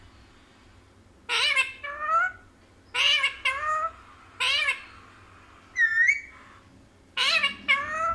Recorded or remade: recorded